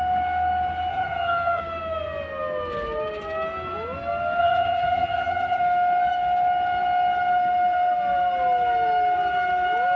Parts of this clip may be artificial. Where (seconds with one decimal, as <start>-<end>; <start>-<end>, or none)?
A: 0.9-1.6; 4.4-5.6